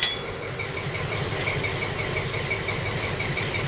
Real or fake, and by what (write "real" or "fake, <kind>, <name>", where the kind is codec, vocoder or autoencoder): real